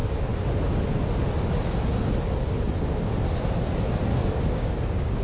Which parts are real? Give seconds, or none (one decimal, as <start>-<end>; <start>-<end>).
0.0-4.1